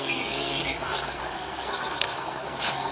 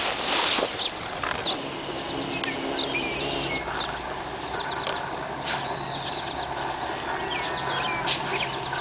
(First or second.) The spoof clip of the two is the first